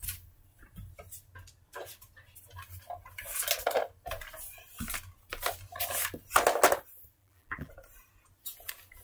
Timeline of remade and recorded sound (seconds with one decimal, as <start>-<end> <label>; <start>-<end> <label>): 0.0-7.2 recorded; 7.2-7.7 remade; 7.7-9.0 recorded